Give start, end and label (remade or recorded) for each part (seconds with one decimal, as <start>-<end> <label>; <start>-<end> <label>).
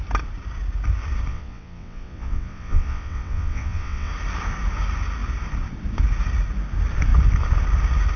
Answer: 0.0-1.3 recorded; 1.3-4.1 remade; 4.1-8.2 recorded